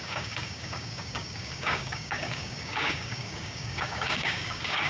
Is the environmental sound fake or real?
fake